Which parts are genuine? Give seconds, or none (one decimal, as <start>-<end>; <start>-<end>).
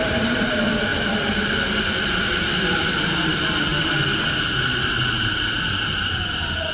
3.7-6.7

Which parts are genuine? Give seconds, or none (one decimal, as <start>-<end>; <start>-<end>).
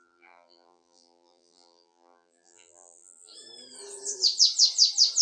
3.3-5.2